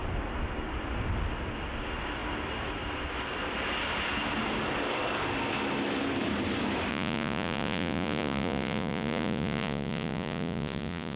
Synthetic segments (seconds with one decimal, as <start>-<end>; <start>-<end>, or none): 6.9-11.2